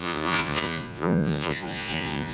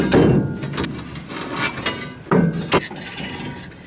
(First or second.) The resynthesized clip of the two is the first